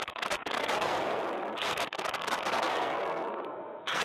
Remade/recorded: remade